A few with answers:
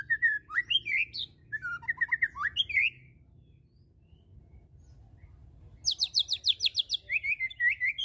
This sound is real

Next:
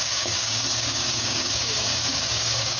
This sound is fake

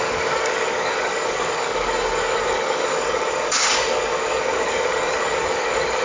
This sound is fake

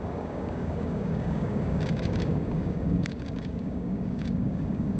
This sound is fake